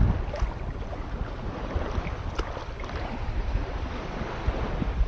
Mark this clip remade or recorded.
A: remade